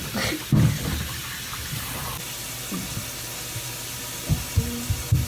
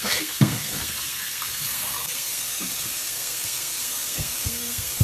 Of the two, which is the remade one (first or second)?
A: second